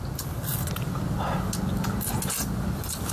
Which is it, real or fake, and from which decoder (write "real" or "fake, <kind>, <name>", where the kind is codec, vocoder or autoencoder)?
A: real